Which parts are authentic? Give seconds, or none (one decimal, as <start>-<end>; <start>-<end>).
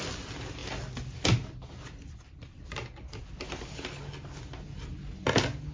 0.0-5.7